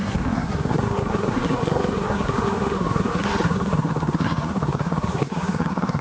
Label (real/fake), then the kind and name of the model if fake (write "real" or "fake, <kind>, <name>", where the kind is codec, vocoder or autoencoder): fake, codec, SNAC